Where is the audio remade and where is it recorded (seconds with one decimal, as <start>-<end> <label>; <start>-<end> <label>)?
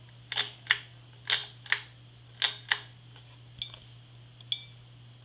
0.0-5.2 recorded